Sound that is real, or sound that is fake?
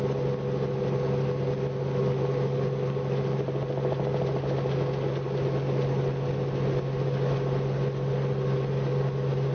real